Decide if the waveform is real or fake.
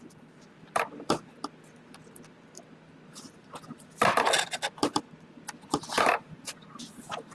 fake